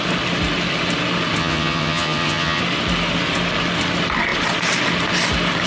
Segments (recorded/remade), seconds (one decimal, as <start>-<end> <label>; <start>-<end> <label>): 0.0-1.4 recorded; 1.4-2.6 remade; 2.6-5.7 recorded

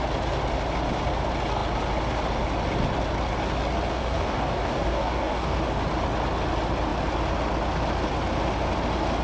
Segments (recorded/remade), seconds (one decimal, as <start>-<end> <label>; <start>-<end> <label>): 0.0-3.9 recorded; 3.9-5.6 remade; 5.6-9.2 recorded

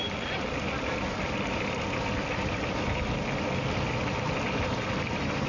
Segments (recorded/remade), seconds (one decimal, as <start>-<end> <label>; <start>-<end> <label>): 0.0-5.5 recorded

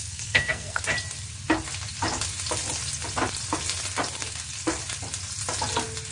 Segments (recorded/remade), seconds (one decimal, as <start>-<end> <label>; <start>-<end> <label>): 0.0-0.8 remade; 0.8-6.1 recorded

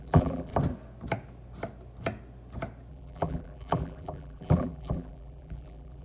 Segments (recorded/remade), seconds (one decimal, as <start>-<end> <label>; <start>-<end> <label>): 0.0-0.5 remade; 0.5-2.9 recorded; 2.9-6.0 remade

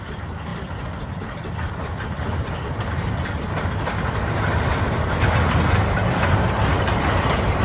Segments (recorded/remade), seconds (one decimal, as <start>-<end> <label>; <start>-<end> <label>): 0.0-0.5 recorded; 0.5-1.7 remade; 1.7-7.6 recorded

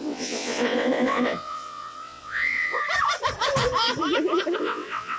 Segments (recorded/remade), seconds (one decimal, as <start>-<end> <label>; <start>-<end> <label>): 0.0-2.8 remade; 2.8-4.6 recorded; 4.6-5.2 remade

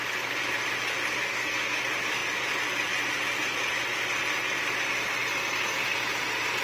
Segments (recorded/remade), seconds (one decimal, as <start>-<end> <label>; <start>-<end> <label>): 0.0-1.3 recorded; 1.3-1.8 remade; 1.8-6.6 recorded